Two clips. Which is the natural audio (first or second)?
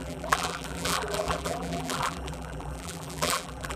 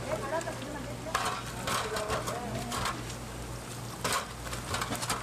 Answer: second